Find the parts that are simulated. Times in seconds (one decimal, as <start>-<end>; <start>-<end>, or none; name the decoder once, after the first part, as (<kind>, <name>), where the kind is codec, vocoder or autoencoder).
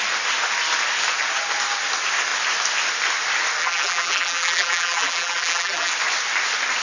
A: 3.6-5.9 (vocoder, BigVGAN v2)